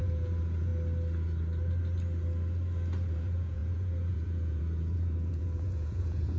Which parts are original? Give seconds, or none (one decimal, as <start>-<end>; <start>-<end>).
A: 0.7-3.1